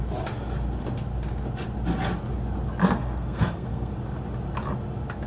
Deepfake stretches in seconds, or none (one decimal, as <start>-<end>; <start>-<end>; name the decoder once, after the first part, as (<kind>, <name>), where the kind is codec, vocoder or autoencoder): 2.8-3.9 (codec, SNAC)